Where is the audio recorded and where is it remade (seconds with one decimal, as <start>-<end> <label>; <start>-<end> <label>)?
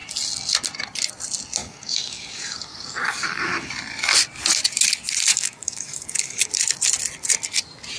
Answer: 0.0-1.6 recorded; 1.6-3.7 remade; 3.7-5.3 recorded; 5.3-6.5 remade; 6.5-8.0 recorded